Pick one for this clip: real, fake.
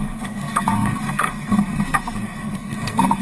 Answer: fake